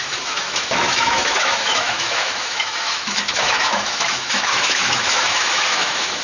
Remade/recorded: remade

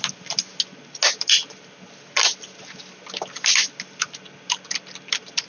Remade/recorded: recorded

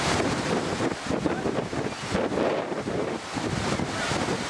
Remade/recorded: recorded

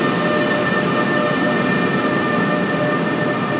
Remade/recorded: recorded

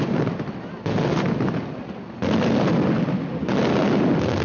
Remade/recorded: recorded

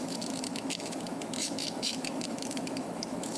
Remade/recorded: remade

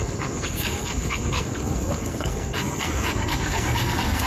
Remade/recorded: remade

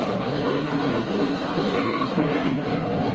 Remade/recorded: remade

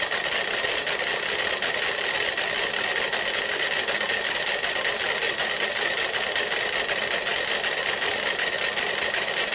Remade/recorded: recorded